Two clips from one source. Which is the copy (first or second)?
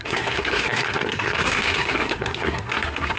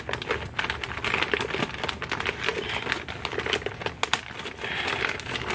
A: first